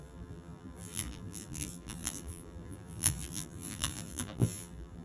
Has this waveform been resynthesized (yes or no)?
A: yes